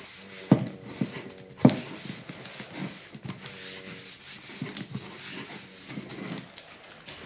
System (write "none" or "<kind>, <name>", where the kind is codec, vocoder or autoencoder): none